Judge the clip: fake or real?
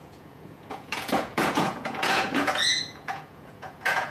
fake